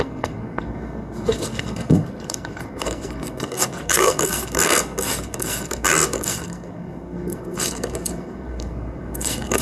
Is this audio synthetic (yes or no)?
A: yes